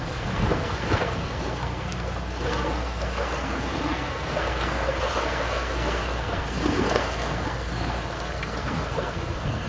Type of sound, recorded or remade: remade